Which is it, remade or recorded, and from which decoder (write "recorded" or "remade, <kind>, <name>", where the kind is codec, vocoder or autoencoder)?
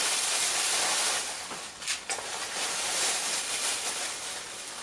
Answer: recorded